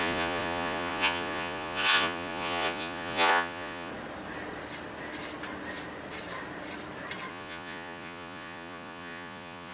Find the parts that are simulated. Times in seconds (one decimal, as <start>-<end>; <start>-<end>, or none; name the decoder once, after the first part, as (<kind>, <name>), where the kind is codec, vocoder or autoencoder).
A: 0.0-3.9 (vocoder, Vocos); 7.3-9.7